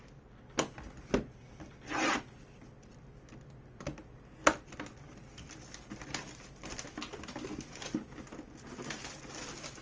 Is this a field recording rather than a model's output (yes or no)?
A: yes